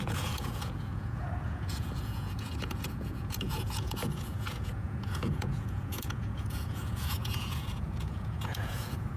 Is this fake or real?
fake